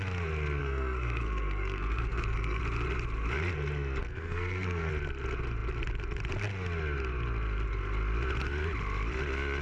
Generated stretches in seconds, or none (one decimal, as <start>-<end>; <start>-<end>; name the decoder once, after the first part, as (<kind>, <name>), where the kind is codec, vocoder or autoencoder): 0.6-2.6 (codec, SNAC); 4.0-4.9